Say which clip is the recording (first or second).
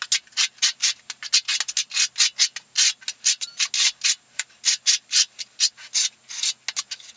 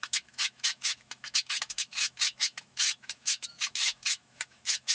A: first